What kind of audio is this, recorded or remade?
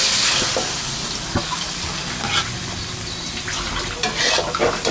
recorded